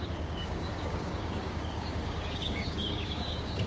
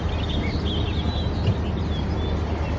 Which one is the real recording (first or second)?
second